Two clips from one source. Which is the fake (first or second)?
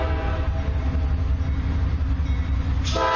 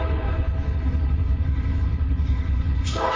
second